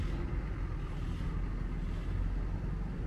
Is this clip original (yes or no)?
yes